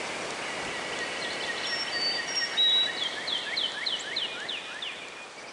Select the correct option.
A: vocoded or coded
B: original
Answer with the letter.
B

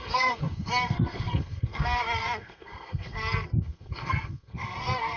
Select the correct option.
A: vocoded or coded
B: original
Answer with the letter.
A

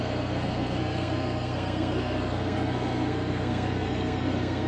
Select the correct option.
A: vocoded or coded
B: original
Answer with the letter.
A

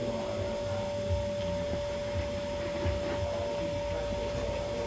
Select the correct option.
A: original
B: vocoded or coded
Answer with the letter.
A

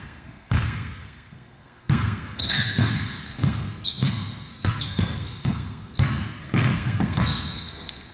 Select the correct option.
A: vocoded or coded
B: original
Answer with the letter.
A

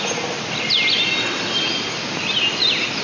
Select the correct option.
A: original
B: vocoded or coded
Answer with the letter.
A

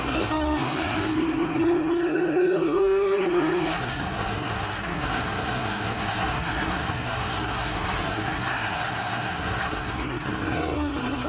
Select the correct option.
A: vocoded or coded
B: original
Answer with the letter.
A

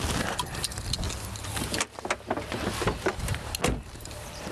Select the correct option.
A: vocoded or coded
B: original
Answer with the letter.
B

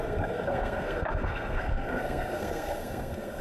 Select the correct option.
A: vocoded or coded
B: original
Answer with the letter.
A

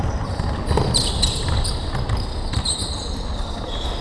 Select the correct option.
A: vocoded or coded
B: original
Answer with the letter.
B